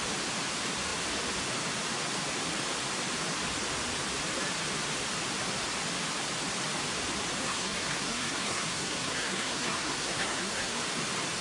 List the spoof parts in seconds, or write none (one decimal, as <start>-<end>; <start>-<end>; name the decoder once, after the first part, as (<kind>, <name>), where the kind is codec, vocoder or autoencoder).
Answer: 7.4-10.8 (codec, SNAC)